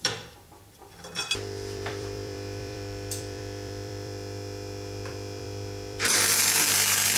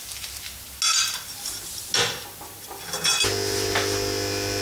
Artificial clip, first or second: first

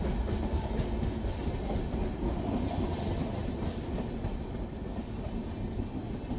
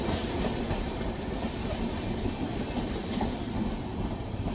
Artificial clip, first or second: second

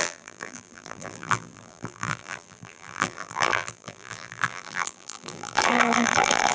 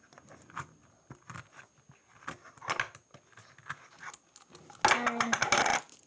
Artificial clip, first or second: first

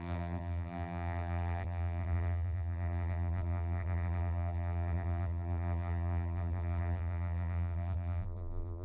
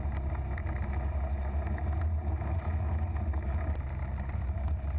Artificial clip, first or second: first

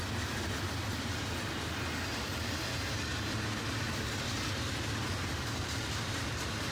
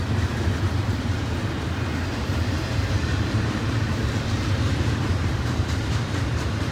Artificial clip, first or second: second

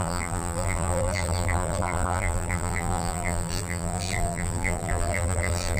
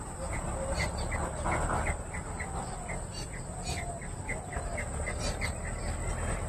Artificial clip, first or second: first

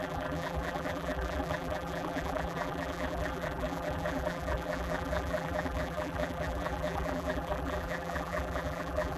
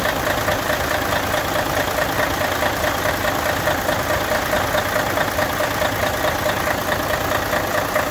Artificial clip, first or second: first